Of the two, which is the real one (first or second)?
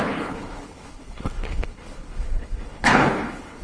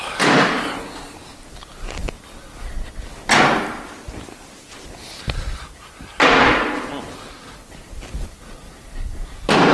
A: second